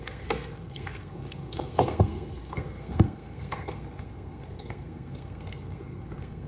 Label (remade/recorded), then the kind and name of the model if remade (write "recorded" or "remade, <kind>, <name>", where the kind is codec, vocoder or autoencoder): remade, codec, SNAC